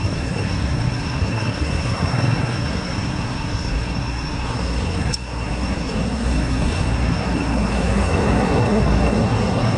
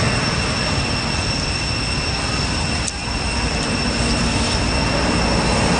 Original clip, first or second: second